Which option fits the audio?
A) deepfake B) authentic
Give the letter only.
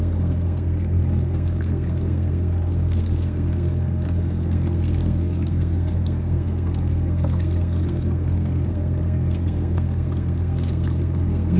A